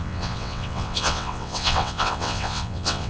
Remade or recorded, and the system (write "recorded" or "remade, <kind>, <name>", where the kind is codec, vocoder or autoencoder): remade, vocoder, WaveNeXt